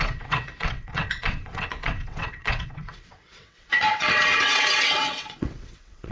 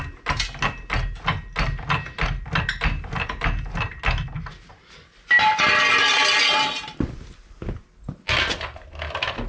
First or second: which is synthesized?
first